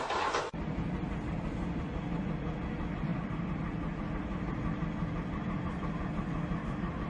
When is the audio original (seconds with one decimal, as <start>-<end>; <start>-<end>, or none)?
0.0-7.1